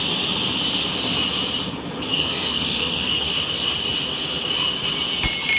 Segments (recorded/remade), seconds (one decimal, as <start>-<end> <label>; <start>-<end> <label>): 0.0-2.1 recorded; 2.1-3.3 remade; 3.3-5.6 recorded